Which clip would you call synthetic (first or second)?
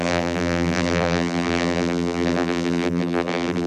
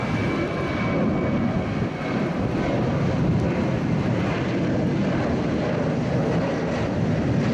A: first